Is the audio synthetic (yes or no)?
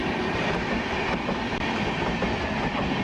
no